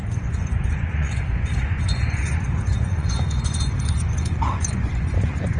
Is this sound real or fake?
fake